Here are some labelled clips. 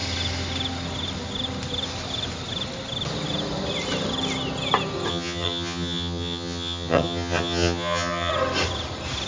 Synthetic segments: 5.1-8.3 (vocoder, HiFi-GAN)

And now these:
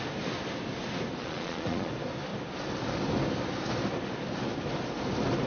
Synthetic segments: 1.2-1.9 (vocoder, Vocos)